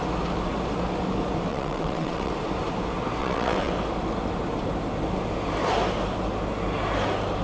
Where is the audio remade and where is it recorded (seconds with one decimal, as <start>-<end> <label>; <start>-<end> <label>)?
0.0-1.5 recorded; 1.5-2.3 remade; 2.3-3.2 recorded; 3.2-3.7 remade; 3.7-7.4 recorded